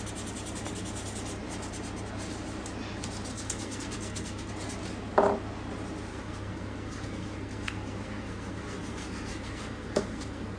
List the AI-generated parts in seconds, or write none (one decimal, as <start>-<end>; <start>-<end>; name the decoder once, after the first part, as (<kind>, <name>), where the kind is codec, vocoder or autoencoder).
3.3-4.5 (codec, SNAC); 6.1-10.6

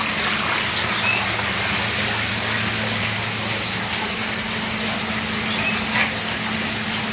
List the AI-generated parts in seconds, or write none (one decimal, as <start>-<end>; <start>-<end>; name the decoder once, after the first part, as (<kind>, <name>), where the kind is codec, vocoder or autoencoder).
none